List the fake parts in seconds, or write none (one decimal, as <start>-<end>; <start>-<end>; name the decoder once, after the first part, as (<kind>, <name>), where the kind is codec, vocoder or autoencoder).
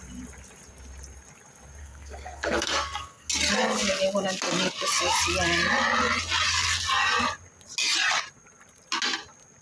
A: 1.8-3.3 (codec, SNAC)